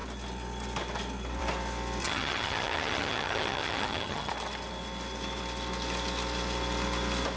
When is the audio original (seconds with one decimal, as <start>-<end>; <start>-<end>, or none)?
0.0-2.0; 4.3-7.4